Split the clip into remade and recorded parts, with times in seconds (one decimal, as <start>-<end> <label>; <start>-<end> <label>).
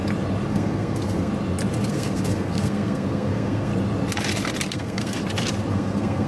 0.0-0.5 recorded; 0.5-1.3 remade; 1.3-1.9 recorded; 1.9-3.7 remade; 3.7-4.7 recorded; 4.7-5.2 remade; 5.2-5.7 recorded; 5.7-6.3 remade